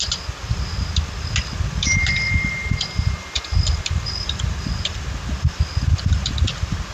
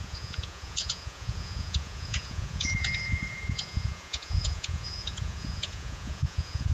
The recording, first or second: first